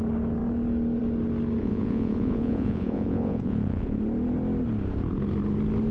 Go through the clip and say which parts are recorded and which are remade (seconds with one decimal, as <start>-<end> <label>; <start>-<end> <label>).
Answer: 0.0-1.6 recorded; 1.6-4.0 remade; 4.0-5.9 recorded